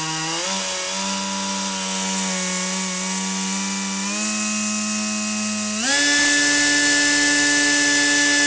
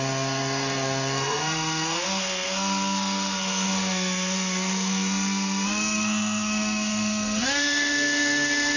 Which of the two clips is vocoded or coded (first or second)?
second